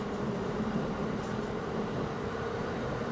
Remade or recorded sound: remade